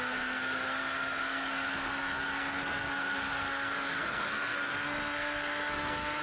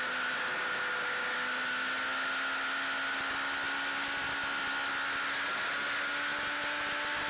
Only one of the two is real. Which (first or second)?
second